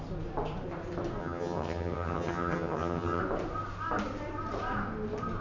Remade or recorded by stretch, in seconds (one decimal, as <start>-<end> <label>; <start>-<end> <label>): 0.0-1.2 recorded; 1.2-3.2 remade; 3.2-5.4 recorded